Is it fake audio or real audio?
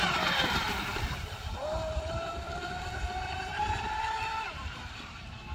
fake